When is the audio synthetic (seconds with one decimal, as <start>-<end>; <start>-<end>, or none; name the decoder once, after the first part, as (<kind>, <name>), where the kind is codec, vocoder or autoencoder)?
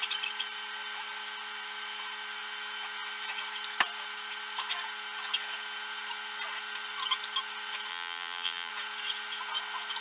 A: 7.9-8.7 (vocoder, BigVGAN v2)